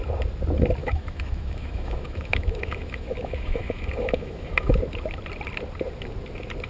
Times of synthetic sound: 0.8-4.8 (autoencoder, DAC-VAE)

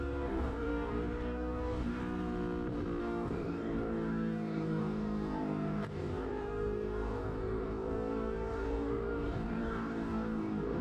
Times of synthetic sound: 0.0-2.0 (codec, DAC); 3.0-10.8